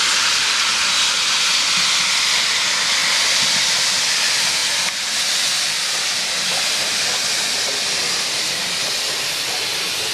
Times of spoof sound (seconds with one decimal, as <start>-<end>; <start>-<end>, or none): 3.0-3.8